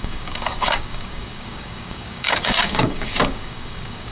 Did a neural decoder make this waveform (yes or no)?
yes